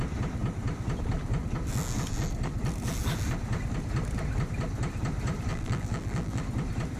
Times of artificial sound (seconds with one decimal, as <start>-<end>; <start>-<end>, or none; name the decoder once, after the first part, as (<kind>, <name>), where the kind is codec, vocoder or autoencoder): 5.5-6.4 (vocoder, BigVGAN v2)